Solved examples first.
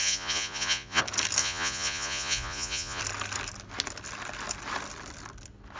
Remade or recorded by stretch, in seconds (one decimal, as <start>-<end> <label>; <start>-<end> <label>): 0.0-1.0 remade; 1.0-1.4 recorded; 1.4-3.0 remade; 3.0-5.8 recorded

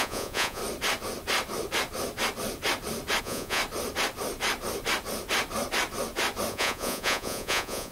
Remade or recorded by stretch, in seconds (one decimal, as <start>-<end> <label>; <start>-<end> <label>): 0.0-0.6 remade; 0.6-3.2 recorded; 3.2-3.6 remade; 3.6-6.5 recorded; 6.5-7.9 remade

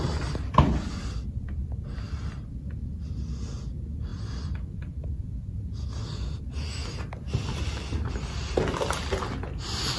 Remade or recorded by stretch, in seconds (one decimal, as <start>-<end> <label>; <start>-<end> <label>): 0.0-10.0 recorded

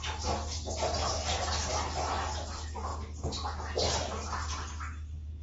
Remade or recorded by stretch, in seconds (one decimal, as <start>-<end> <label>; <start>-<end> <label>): 0.0-5.4 recorded

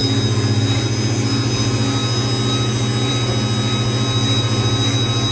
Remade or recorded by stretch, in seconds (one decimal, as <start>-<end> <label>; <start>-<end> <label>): 0.0-5.3 recorded

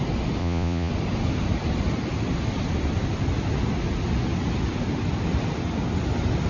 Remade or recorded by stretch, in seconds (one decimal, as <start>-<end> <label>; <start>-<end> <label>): 0.0-0.4 recorded; 0.4-0.9 remade; 0.9-6.5 recorded

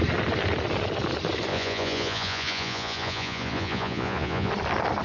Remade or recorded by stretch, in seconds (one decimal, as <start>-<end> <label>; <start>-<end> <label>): 0.0-1.5 recorded; 1.5-4.5 remade; 4.5-5.0 recorded